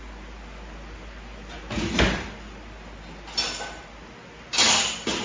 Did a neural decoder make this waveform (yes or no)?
no